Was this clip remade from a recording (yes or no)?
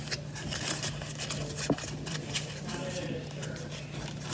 no